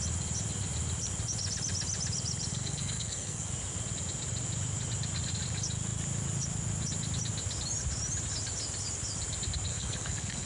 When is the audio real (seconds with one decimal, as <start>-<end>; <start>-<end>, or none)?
0.0-2.5; 3.5-9.7